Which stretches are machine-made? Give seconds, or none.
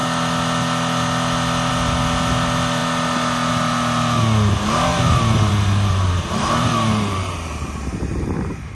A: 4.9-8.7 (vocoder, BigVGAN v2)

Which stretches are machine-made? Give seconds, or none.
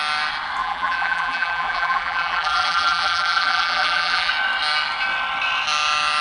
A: 0.6-4.3 (vocoder, BigVGAN v2)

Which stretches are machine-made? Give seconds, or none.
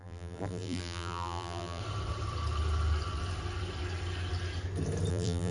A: 0.0-1.8 (vocoder, BigVGAN v2); 5.1-5.5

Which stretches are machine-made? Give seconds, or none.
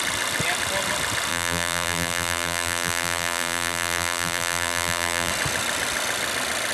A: 1.3-5.3 (vocoder, BigVGAN v2)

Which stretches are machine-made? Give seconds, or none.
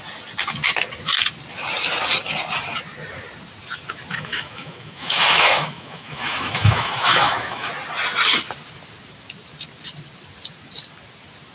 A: 4.1-7.7 (autoencoder, DAC-VAE)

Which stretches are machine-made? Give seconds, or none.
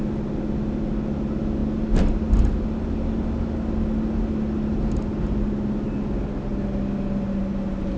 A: none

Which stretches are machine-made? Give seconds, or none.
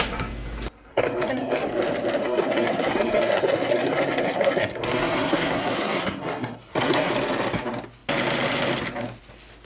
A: 0.9-1.7 (codec, SNAC); 2.2-7.1